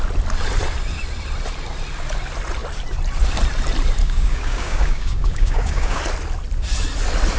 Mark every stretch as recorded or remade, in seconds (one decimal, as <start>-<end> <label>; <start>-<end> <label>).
0.0-4.0 recorded; 4.0-6.0 remade; 6.0-7.4 recorded